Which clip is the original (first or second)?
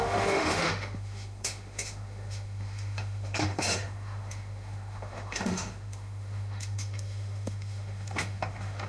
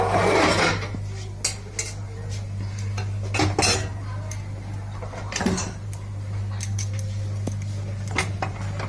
second